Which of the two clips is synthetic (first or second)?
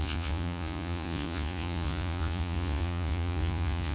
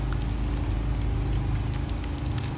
first